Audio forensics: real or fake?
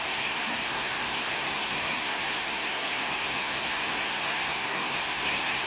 fake